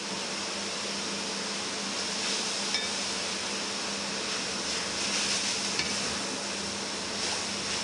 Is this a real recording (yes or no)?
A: yes